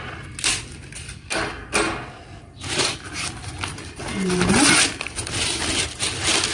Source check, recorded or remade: recorded